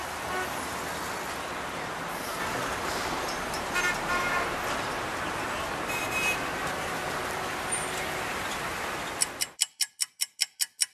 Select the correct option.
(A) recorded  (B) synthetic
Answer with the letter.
A